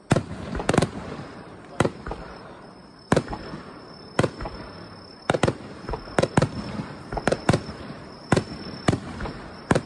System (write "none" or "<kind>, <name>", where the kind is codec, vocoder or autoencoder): vocoder, BigVGAN v2